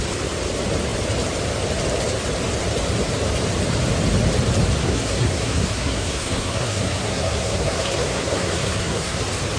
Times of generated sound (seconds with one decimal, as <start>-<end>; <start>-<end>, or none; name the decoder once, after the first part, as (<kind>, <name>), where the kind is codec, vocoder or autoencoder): 4.8-9.2 (codec, SNAC)